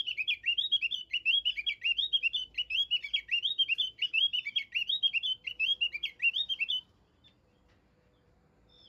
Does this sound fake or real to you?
fake